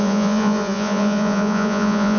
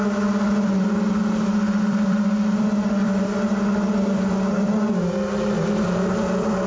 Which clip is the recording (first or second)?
second